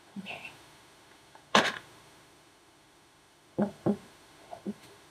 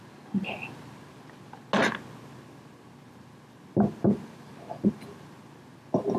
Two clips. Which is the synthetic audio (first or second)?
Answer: first